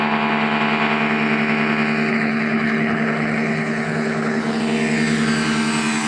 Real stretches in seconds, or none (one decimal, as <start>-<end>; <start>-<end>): 0.0-2.1; 4.6-6.1